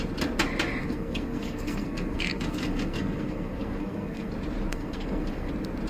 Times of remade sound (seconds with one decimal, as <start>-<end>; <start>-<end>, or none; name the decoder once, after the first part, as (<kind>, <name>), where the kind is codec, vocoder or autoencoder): 0.8-4.3 (codec, SNAC); 4.7-5.5